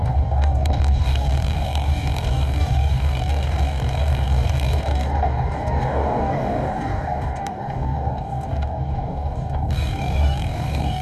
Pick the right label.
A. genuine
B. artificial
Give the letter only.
B